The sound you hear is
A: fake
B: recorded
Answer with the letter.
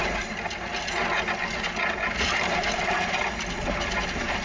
B